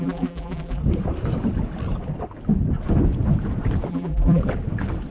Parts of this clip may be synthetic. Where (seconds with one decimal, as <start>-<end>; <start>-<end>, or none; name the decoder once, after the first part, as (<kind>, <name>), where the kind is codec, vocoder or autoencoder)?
0.0-0.8 (vocoder, BigVGAN v2); 3.9-4.4